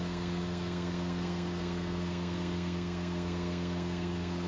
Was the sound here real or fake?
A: fake